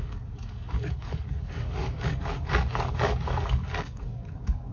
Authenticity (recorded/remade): remade